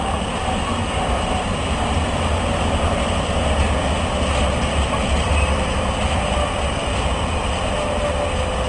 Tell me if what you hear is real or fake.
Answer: real